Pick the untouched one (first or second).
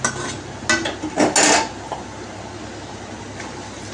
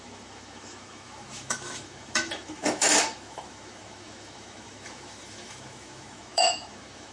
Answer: first